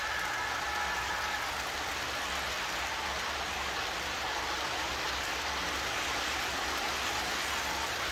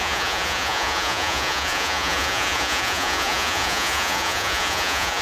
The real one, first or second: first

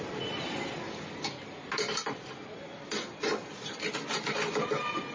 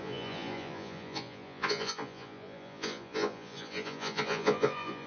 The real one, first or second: first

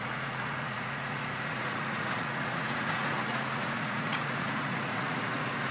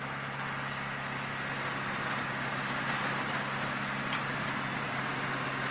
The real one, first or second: second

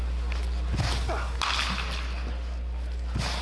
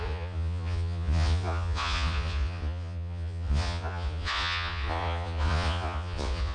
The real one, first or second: first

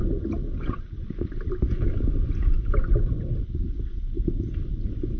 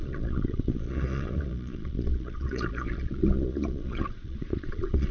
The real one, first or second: first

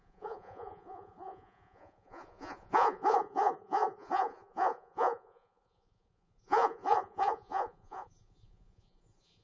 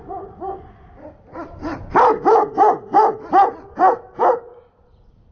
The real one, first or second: second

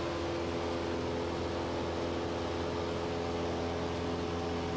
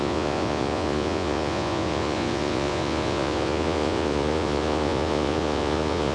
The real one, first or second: first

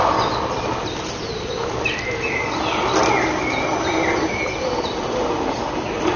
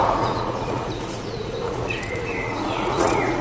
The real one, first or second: first